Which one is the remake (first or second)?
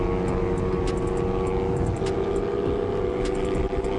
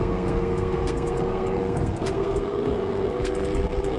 second